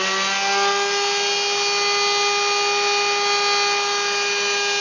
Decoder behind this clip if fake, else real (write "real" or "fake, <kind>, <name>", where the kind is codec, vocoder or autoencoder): real